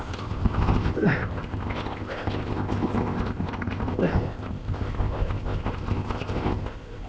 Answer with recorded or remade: remade